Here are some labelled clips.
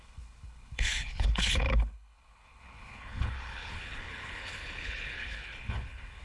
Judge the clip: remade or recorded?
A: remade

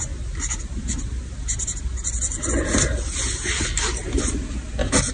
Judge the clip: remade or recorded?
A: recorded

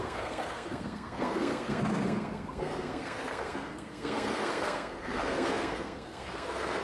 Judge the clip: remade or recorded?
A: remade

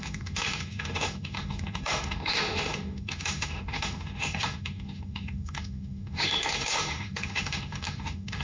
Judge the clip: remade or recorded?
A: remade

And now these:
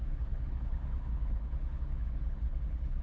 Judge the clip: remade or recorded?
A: remade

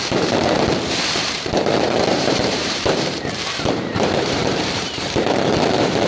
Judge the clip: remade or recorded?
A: remade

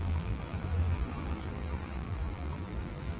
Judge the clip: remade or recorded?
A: remade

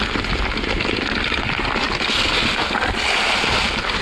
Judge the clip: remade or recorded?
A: recorded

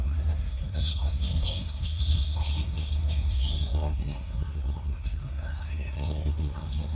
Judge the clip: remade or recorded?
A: remade